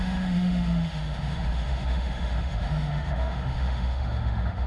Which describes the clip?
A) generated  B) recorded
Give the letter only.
A